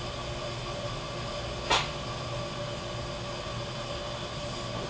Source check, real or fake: real